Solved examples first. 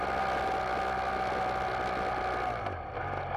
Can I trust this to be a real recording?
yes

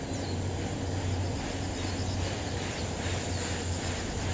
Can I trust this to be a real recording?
yes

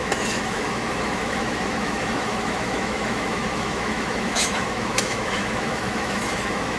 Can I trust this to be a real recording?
no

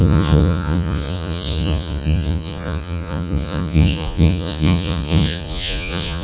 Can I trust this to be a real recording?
no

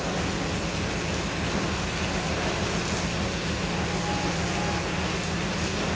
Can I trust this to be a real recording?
yes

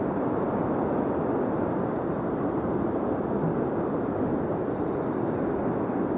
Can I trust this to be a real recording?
yes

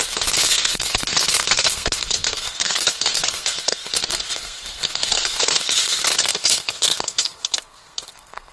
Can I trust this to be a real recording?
no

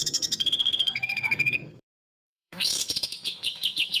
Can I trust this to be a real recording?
no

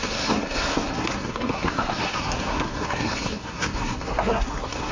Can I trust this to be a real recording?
no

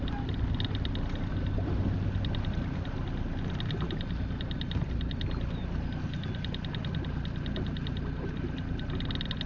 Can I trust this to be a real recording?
yes